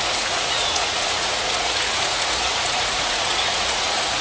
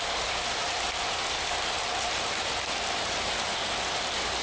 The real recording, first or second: second